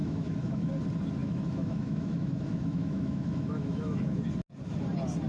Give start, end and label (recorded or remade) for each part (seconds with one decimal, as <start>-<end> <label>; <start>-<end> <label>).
0.0-0.7 remade; 0.7-1.2 recorded; 1.2-4.2 remade; 4.2-5.3 recorded